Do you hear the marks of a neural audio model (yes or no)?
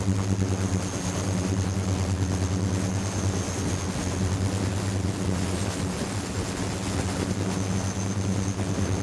no